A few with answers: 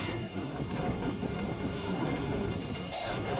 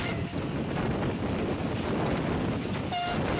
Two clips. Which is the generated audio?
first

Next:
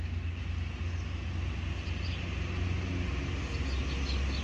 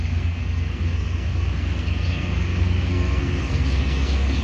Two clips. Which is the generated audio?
second